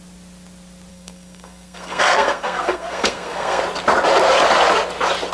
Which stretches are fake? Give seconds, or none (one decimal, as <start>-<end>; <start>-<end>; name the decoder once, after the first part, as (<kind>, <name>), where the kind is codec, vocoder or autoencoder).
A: 0.9-3.6 (codec, SNAC)